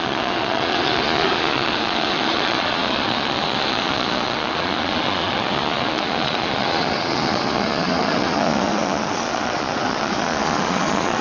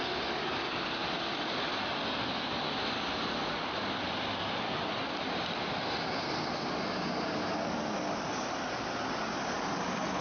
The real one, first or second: second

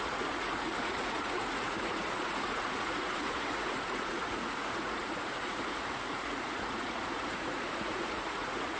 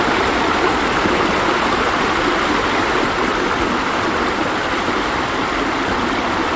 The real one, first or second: second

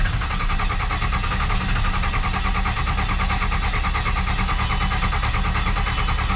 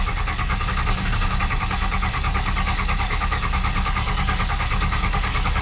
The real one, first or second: first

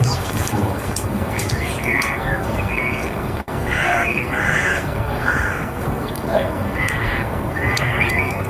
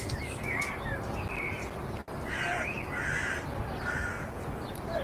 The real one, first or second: second